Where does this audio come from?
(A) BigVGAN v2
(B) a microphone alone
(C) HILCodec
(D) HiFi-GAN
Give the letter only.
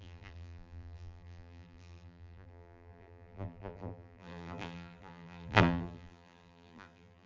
A